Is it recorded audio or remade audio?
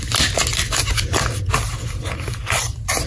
recorded